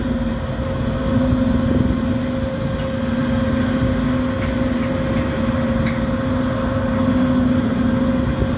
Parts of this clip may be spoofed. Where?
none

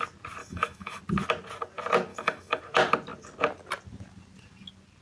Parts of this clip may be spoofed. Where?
0.4-1.0 (autoencoder, DAC-VAE); 2.1-2.6

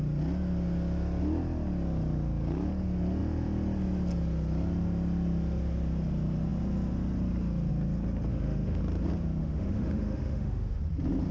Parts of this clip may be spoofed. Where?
8.3-8.8 (autoencoder, DAC-VAE); 9.4-10.8

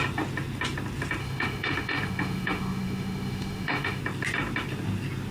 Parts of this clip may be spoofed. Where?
1.2-4.0 (autoencoder, DAC-VAE)

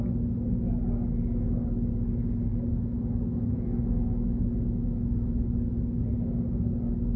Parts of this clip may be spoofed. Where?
2.5-6.1 (autoencoder, DAC-VAE)

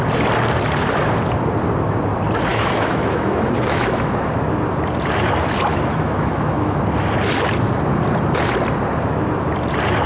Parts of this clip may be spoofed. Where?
2.5-4.3 (autoencoder, DAC-VAE); 5.7-6.8

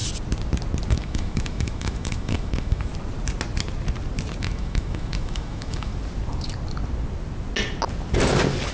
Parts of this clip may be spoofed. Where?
0.9-2.9 (autoencoder, DAC-VAE); 4.4-5.9